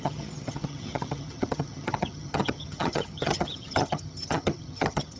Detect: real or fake fake